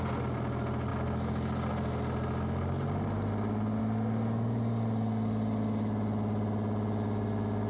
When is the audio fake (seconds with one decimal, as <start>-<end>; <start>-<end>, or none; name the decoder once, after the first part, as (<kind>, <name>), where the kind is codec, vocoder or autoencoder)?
none